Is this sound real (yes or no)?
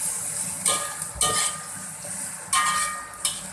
yes